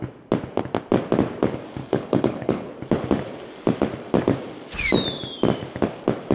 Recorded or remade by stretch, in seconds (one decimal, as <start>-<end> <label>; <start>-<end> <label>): 0.0-1.8 recorded; 1.8-2.7 remade; 2.7-6.3 recorded